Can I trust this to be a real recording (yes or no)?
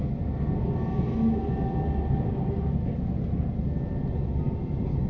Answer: yes